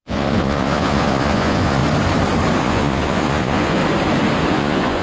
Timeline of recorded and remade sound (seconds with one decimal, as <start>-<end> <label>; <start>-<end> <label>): 0.0-1.8 remade; 1.8-2.6 recorded; 2.6-3.8 remade; 3.8-4.5 recorded; 4.5-5.0 remade